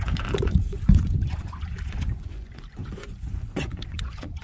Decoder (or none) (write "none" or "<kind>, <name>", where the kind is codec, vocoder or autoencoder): vocoder, Vocos